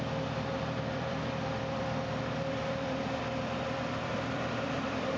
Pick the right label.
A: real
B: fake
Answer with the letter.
B